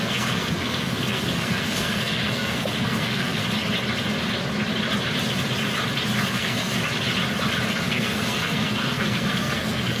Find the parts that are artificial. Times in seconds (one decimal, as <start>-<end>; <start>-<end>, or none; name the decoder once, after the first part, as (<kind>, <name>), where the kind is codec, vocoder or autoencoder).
0.0-3.4 (codec, SNAC); 6.3-6.8; 7.7-10.0